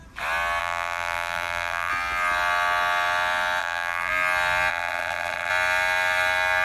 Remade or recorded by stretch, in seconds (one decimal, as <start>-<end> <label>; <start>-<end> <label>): 0.0-0.6 recorded; 0.6-1.9 remade; 1.9-3.6 recorded; 3.6-4.1 remade; 4.1-4.7 recorded; 4.7-5.5 remade; 5.5-6.6 recorded